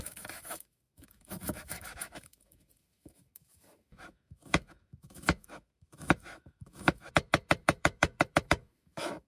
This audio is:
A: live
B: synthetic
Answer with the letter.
B